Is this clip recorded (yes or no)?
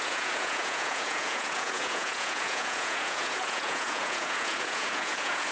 no